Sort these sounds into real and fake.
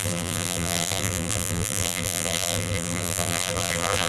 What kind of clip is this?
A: fake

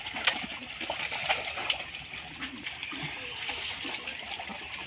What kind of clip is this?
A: fake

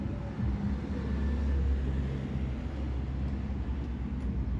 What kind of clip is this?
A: real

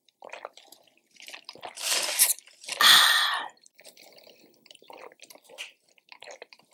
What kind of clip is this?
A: fake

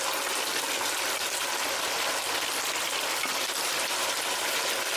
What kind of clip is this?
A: real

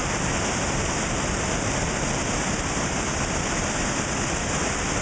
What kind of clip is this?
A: real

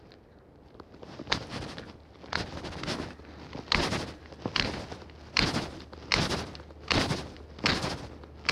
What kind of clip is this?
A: real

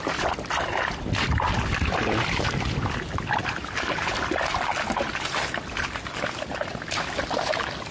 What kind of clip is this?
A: real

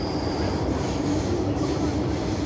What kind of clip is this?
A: real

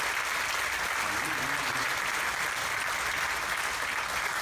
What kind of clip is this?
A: real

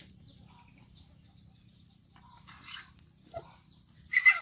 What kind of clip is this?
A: fake